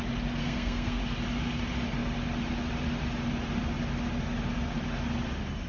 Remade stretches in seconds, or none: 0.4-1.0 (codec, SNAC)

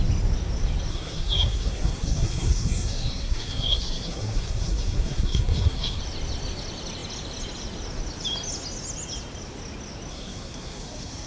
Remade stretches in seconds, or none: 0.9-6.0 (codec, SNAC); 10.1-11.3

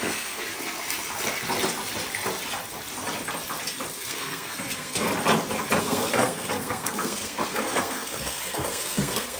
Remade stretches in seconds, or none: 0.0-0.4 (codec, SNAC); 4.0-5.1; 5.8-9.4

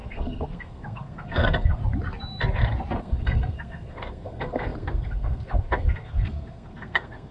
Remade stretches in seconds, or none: 0.0-1.8 (codec, SNAC); 3.0-7.3

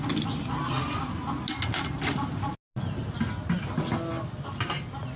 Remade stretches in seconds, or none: none

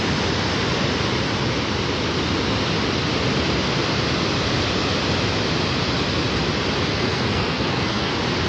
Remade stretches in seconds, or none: 6.9-8.1 (codec, SNAC)

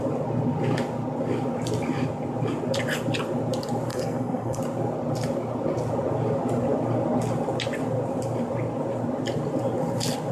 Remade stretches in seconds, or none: 3.9-4.6 (codec, SNAC)